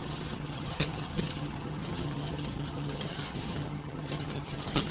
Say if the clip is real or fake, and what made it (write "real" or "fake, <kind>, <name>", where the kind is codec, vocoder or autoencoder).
fake, vocoder, HiFi-GAN